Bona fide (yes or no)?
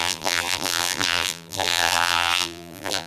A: no